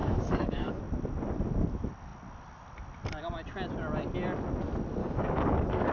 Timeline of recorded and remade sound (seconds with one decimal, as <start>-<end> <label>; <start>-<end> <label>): 0.0-0.8 remade; 0.8-5.0 recorded; 5.0-5.9 remade